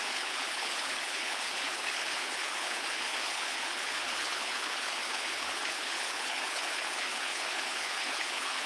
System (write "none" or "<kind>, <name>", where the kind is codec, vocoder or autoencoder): codec, HILCodec